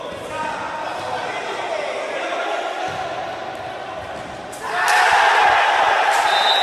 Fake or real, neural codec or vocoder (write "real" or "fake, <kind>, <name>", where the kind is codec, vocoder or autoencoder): real